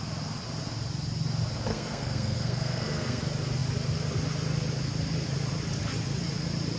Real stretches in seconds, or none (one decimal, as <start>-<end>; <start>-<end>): 0.0-1.7; 3.2-6.8